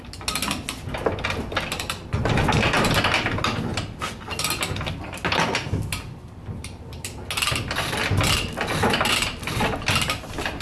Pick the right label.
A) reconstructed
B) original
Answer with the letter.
B